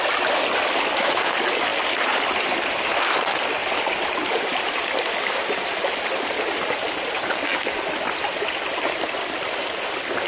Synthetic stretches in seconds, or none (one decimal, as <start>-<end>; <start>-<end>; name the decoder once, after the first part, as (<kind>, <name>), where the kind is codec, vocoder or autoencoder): none